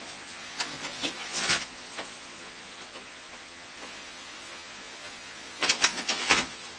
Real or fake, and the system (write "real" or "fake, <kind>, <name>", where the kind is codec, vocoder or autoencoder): fake, vocoder, Vocos